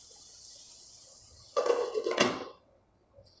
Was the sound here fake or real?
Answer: fake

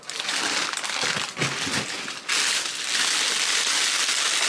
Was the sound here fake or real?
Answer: real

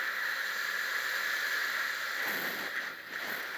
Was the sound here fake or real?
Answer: real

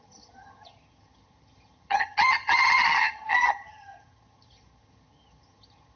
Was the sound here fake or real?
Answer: fake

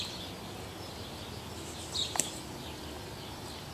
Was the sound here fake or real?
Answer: real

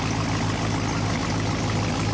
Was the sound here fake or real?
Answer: real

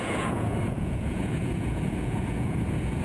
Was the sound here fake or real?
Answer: fake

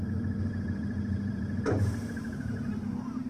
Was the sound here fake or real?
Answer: fake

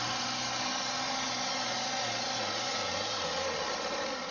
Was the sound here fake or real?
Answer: real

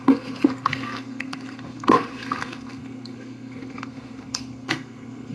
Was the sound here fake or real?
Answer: fake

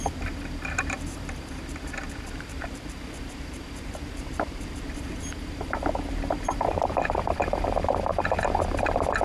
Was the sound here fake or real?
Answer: fake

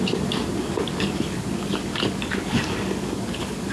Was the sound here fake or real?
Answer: fake